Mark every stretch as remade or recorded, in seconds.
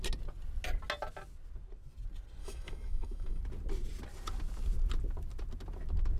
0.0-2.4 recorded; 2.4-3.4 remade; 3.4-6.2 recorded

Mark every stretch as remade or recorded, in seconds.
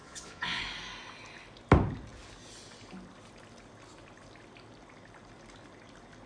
0.0-0.6 remade; 0.6-6.3 recorded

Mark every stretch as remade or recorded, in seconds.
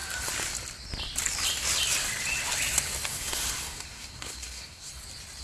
0.0-3.1 recorded; 3.1-4.9 remade; 4.9-5.4 recorded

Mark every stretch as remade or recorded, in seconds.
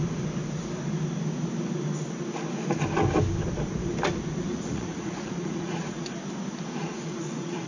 0.0-4.5 recorded; 4.5-6.1 remade; 6.1-6.8 recorded; 6.8-7.7 remade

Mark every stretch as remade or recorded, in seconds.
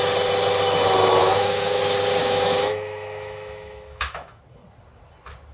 0.0-1.2 recorded; 1.2-1.8 remade; 1.8-2.2 recorded; 2.2-4.4 remade; 4.4-5.5 recorded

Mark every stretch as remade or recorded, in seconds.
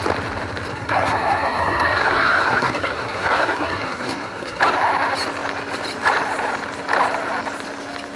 0.0-0.7 recorded; 0.7-4.6 remade; 4.6-8.2 recorded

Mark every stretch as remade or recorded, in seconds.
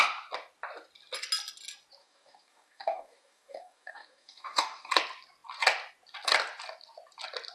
0.0-2.0 recorded; 2.0-4.9 remade; 4.9-7.5 recorded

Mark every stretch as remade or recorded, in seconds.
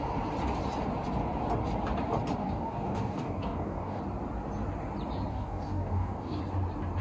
0.0-2.4 recorded; 2.4-4.0 remade; 4.0-5.3 recorded; 5.3-6.4 remade; 6.4-7.0 recorded